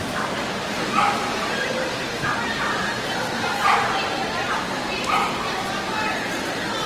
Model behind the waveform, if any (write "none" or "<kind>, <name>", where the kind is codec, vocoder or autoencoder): none